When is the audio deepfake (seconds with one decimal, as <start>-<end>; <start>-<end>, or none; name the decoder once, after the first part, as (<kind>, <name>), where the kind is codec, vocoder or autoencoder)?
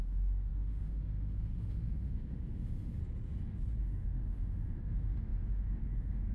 0.0-3.0 (autoencoder, DAC-VAE); 3.8-6.3